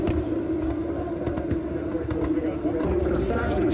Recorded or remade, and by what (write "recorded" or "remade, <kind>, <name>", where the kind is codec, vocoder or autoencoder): recorded